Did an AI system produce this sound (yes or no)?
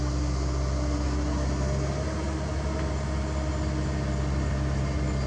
no